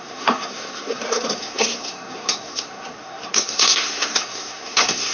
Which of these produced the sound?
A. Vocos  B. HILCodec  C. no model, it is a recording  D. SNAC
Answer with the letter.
D